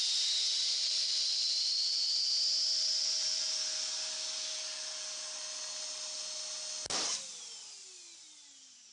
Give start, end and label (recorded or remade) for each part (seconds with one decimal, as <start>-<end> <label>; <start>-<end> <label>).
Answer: 0.0-0.5 recorded; 0.5-2.3 remade; 2.3-8.9 recorded